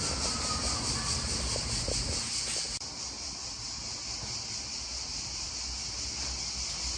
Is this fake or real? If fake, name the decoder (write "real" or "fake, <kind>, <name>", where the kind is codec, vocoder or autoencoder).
real